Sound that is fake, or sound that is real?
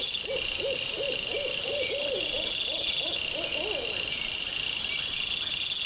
real